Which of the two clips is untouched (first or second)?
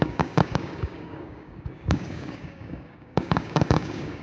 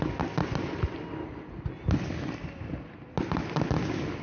second